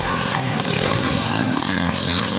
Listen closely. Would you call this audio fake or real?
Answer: fake